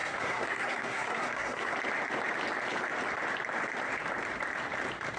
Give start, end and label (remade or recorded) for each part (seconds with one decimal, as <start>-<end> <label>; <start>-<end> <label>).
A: 0.0-1.7 remade; 1.7-5.2 recorded